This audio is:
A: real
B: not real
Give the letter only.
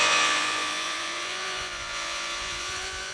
B